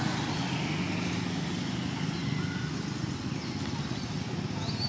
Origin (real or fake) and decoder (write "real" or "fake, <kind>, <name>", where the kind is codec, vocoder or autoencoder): real